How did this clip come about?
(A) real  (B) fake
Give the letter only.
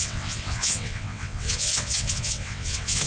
B